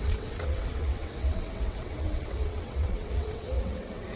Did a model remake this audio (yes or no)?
yes